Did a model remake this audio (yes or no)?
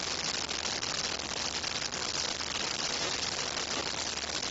no